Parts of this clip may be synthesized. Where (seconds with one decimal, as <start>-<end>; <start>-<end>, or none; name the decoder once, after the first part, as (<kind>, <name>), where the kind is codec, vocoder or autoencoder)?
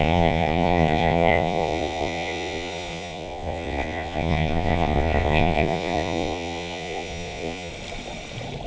0.0-7.7 (vocoder, Vocos)